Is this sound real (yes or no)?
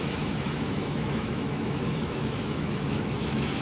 no